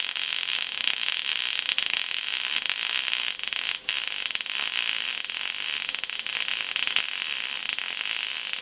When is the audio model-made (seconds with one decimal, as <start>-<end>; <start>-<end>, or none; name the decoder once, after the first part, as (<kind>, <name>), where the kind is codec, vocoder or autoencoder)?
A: 0.0-6.5 (vocoder, BigVGAN v2); 7.1-7.6